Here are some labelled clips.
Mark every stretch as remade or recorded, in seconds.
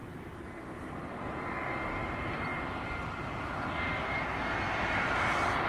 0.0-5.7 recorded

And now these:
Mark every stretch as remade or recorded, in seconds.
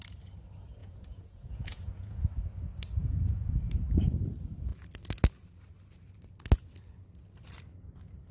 0.0-0.8 recorded; 0.8-2.2 remade; 2.2-3.0 recorded; 3.0-3.6 remade; 3.6-8.3 recorded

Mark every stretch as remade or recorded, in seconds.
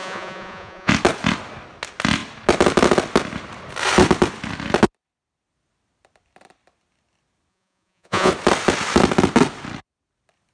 0.0-0.9 remade; 0.9-7.5 recorded; 7.5-8.3 remade; 8.3-10.5 recorded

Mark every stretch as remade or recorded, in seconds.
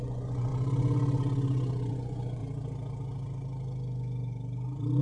0.0-0.5 remade; 0.5-1.9 recorded; 1.9-2.4 remade; 2.4-5.0 recorded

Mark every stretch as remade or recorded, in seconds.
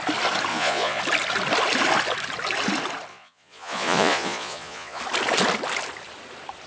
0.0-0.5 recorded; 0.5-1.0 remade; 1.0-3.1 recorded; 3.1-5.0 remade; 5.0-6.7 recorded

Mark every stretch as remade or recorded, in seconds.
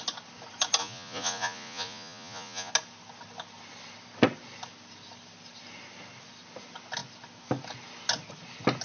0.0-0.8 recorded; 0.8-2.7 remade; 2.7-8.8 recorded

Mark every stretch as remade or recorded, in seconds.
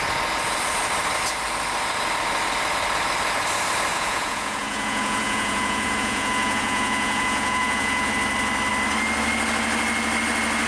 0.0-3.9 recorded; 3.9-8.1 remade; 8.1-10.7 recorded